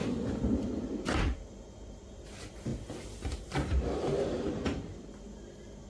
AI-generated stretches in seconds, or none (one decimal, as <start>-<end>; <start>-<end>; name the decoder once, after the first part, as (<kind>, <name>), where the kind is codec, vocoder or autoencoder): 2.1-2.7 (vocoder, BigVGAN v2)